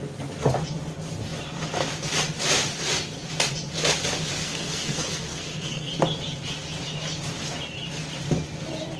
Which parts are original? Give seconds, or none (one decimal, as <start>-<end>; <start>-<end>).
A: 0.0-4.4; 5.9-9.0